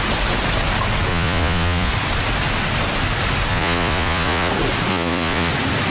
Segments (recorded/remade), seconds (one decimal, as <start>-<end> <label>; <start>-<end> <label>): 0.0-1.1 recorded; 1.1-1.9 remade; 1.9-3.5 recorded; 3.5-4.5 remade; 4.5-4.9 recorded; 4.9-5.5 remade; 5.5-5.9 recorded